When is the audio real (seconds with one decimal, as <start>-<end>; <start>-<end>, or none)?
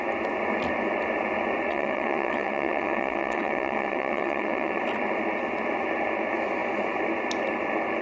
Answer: 0.0-1.7; 4.8-8.0